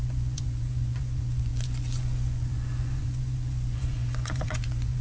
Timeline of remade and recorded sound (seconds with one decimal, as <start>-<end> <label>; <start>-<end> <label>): 0.0-5.0 remade